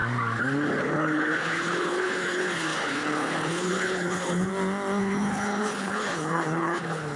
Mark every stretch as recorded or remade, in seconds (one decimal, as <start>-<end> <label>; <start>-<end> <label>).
0.0-0.8 recorded; 0.8-4.5 remade; 4.5-5.0 recorded; 5.0-7.2 remade